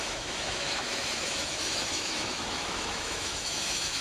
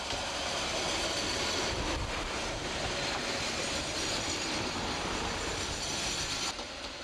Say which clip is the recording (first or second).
second